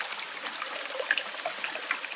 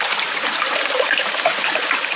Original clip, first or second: first